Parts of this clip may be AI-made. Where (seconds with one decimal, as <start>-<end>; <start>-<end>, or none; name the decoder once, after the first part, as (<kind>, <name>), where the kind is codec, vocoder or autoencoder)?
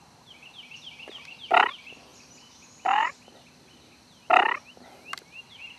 none